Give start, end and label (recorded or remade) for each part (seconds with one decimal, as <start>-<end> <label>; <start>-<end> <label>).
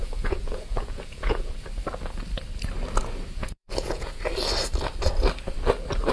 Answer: 0.0-1.5 remade; 1.5-3.4 recorded; 3.4-4.2 remade; 4.2-6.1 recorded